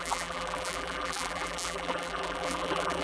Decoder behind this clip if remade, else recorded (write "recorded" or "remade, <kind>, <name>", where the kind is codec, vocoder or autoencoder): remade, vocoder, BigVGAN v2